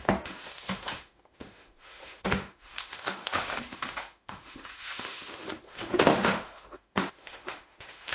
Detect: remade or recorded remade